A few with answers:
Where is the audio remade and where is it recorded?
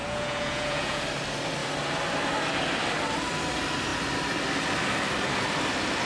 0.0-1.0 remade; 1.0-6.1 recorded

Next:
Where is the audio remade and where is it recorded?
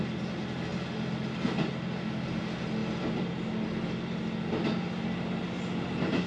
0.0-6.3 recorded